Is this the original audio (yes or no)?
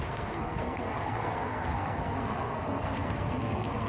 no